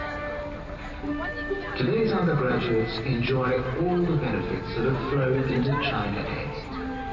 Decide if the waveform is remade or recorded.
recorded